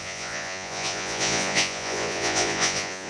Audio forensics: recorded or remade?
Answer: remade